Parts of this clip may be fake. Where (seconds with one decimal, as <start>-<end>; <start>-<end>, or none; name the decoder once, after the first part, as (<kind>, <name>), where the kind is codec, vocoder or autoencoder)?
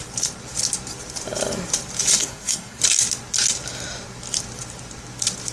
2.2-2.8 (codec, SNAC)